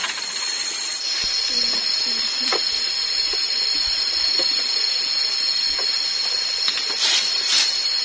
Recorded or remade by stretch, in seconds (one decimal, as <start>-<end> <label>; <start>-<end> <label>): 0.0-8.0 recorded